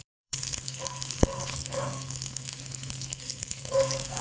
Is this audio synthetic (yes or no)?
yes